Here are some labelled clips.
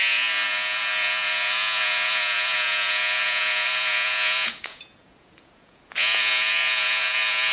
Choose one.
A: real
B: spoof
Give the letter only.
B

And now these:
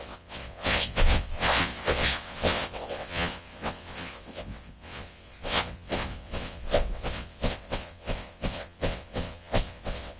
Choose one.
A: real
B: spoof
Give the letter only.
B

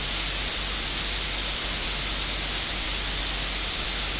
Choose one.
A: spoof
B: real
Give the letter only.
B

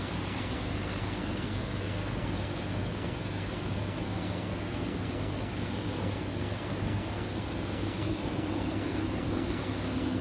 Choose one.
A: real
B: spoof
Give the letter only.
B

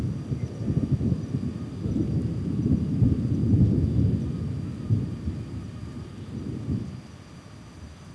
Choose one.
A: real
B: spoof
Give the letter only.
A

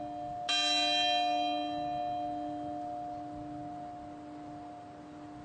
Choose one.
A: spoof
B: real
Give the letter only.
B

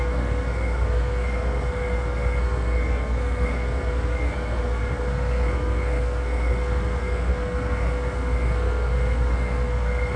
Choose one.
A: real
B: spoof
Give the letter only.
B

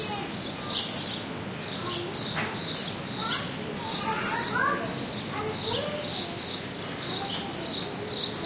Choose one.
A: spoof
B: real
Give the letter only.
B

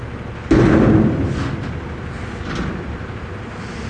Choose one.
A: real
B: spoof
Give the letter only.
A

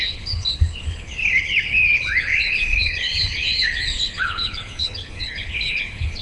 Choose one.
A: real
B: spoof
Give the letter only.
B